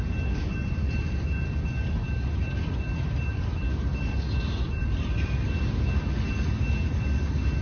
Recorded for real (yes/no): yes